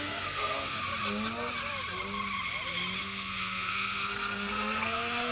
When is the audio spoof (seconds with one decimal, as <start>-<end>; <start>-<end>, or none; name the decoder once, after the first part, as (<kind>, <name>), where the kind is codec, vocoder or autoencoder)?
0.0-0.9 (codec, SNAC); 3.0-5.3